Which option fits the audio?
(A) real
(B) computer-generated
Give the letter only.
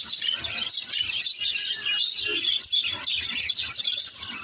A